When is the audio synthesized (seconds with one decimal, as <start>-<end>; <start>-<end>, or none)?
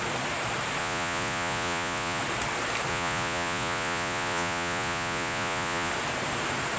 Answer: 0.8-2.2; 2.9-5.9